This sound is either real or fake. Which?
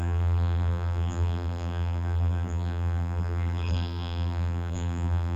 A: fake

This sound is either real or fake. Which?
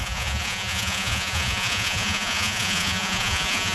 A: fake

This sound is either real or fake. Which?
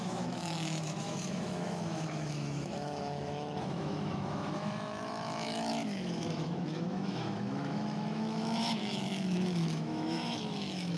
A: fake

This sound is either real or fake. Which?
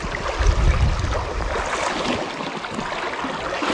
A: real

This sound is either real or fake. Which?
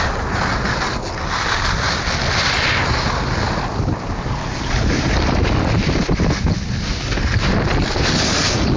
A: real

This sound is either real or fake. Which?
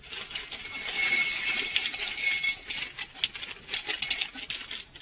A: real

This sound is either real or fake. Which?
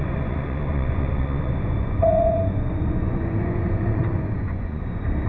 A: fake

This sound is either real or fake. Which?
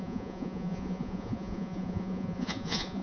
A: fake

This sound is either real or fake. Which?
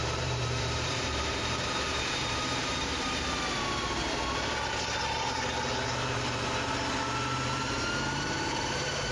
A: fake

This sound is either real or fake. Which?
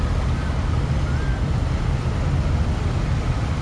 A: real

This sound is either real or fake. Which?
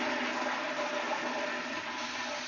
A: real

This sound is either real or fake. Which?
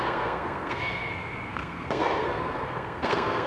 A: fake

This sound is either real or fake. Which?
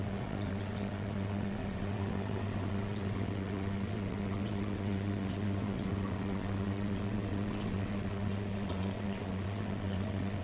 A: fake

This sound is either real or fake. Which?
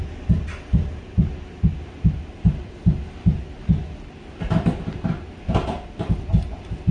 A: real